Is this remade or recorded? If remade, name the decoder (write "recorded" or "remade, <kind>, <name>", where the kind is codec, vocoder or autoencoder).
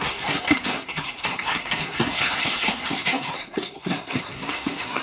remade, codec, SNAC